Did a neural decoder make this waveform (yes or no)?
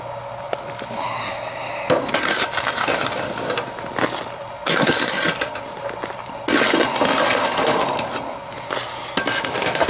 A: no